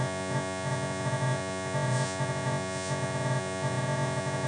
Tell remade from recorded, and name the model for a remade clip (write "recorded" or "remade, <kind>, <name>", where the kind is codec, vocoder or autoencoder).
remade, vocoder, Vocos